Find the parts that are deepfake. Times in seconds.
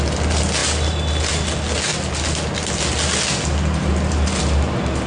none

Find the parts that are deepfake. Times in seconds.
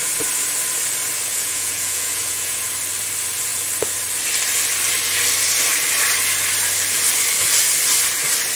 1.3-2.7 (vocoder, Vocos)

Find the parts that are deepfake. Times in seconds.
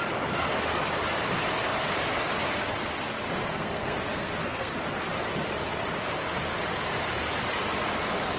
3.5-4.8 (codec, SNAC)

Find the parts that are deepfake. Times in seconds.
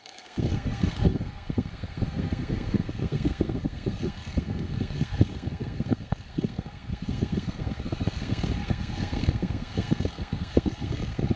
0.0-11.4 (codec, SNAC)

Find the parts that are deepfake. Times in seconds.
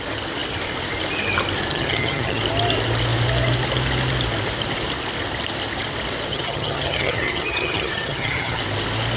1.7-2.4 (vocoder, HiFi-GAN); 6.3-8.6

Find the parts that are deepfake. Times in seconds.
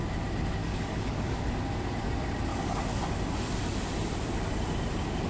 0.6-1.5 (codec, DAC); 2.5-3.0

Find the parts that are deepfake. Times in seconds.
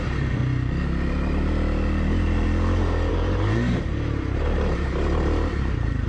0.0-0.4 (vocoder, BigVGAN v2); 3.1-6.1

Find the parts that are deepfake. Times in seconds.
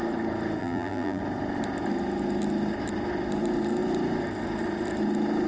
0.6-1.2 (vocoder, BigVGAN v2)